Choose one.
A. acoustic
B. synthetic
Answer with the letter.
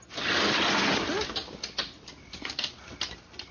A